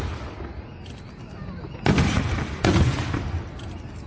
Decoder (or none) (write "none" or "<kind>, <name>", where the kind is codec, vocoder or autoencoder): none